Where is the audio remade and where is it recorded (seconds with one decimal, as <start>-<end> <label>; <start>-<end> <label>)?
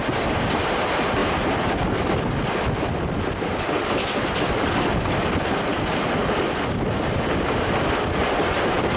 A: 0.0-9.0 recorded